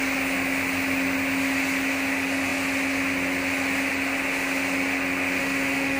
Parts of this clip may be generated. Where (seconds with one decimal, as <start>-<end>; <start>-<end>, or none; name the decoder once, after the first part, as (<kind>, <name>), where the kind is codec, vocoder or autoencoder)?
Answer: 5.4-6.0 (autoencoder, DAC-VAE)